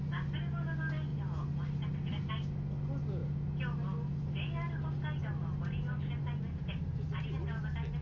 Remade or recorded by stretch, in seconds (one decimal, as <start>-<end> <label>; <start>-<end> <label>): 0.0-8.0 recorded